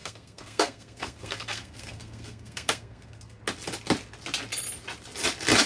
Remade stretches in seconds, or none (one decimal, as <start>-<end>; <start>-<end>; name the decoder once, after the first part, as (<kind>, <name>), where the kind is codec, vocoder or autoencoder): 0.0-3.4 (codec, SNAC)